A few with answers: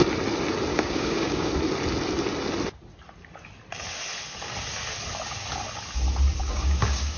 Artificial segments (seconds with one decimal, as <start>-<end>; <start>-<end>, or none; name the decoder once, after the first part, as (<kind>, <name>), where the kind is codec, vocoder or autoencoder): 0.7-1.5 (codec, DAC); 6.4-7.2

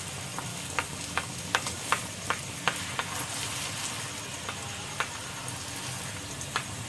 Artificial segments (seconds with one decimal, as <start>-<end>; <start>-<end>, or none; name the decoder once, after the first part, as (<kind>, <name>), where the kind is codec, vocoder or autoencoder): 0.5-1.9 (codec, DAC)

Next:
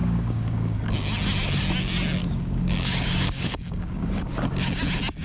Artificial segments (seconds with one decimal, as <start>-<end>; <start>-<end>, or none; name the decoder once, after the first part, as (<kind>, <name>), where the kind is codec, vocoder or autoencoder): 0.0-0.9 (codec, DAC); 2.2-4.5